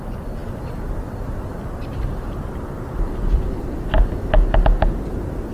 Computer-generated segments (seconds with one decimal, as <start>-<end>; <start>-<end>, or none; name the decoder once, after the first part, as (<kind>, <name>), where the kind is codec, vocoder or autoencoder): none